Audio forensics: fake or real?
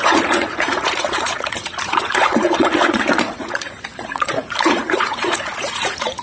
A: fake